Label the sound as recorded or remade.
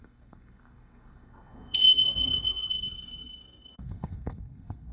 remade